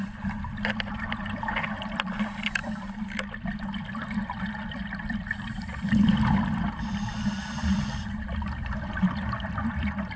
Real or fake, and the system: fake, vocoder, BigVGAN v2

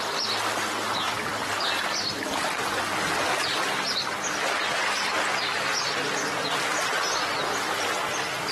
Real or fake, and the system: real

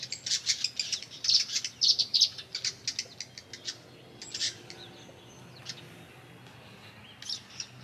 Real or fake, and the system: real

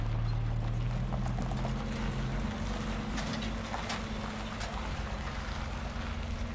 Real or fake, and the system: real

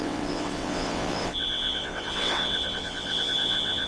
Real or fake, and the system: fake, vocoder, WaveNeXt